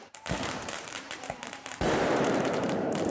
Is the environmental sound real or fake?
fake